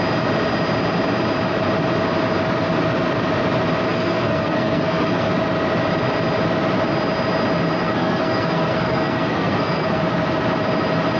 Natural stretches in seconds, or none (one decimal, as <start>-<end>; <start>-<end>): 0.0-3.9; 5.3-7.8; 10.0-11.2